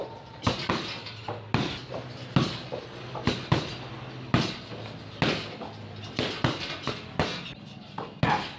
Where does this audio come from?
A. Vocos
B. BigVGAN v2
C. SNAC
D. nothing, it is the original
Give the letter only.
D